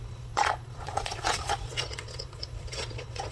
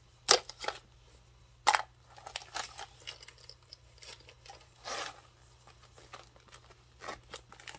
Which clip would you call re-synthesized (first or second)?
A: first